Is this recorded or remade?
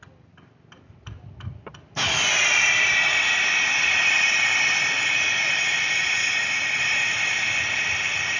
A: recorded